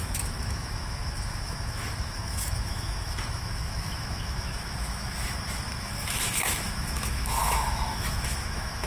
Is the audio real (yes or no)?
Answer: no